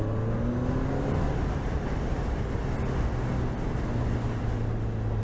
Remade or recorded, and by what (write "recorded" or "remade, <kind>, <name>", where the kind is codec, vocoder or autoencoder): recorded